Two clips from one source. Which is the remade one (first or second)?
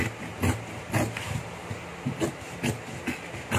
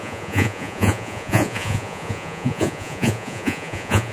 second